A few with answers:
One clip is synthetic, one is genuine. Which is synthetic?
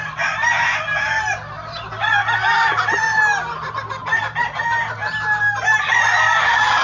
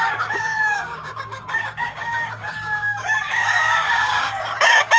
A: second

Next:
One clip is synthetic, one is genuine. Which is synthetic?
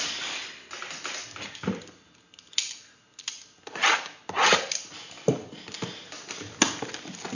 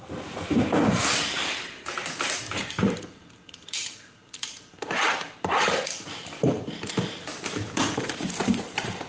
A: second